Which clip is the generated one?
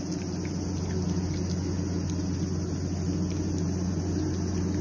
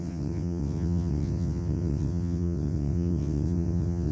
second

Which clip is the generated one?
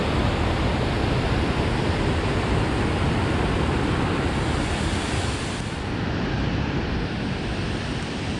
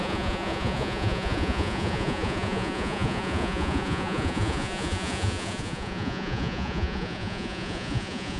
second